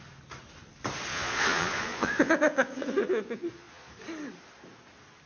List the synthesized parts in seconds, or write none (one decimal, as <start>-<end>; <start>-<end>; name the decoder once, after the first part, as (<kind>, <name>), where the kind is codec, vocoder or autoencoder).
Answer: 1.1-3.9 (vocoder, Vocos)